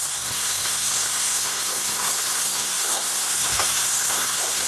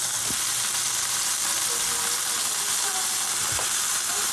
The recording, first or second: second